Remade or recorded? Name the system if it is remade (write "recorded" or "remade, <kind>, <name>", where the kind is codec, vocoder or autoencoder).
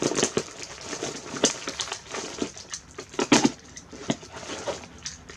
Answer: recorded